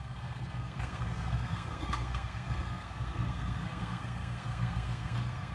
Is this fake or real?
fake